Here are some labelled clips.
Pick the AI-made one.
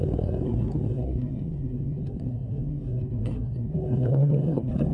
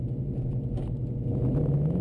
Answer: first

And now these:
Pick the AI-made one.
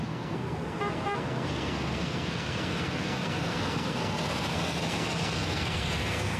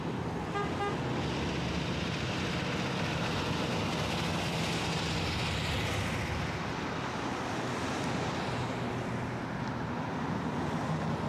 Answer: first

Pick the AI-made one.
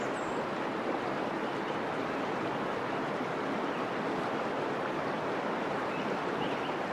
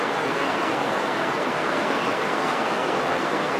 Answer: second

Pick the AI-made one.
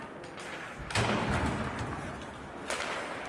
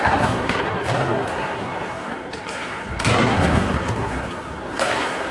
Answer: second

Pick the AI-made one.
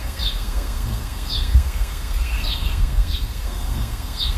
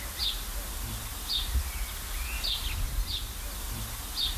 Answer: first